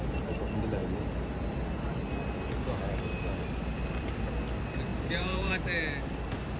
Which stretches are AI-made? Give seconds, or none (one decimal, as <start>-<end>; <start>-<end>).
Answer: 4.9-5.5